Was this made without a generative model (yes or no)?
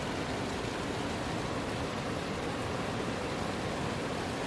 yes